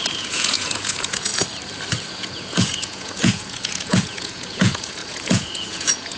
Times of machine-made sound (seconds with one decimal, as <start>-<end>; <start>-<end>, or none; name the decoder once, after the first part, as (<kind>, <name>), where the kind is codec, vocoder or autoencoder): 0.0-1.3 (vocoder, Vocos); 2.1-6.2